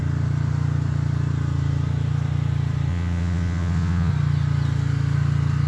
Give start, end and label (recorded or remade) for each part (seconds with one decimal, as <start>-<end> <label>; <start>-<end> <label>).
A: 0.0-2.9 recorded; 2.9-4.1 remade; 4.1-5.7 recorded